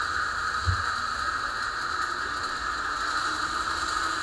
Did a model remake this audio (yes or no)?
no